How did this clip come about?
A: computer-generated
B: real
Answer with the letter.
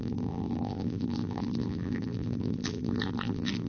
A